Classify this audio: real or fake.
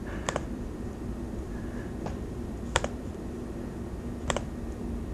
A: fake